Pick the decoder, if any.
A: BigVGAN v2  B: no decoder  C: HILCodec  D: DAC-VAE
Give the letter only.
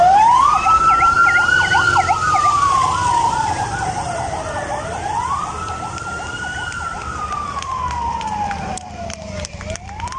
A